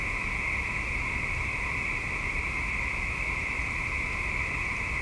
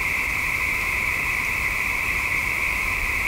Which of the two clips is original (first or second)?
first